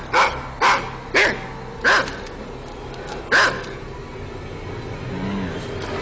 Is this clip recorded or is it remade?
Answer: recorded